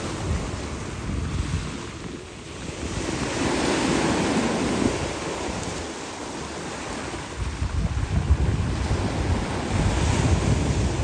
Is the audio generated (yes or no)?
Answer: no